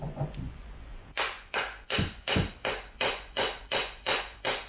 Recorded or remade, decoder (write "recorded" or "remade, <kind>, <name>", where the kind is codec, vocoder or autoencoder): remade, vocoder, Vocos